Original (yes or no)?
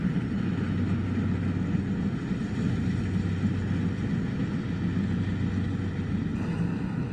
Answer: yes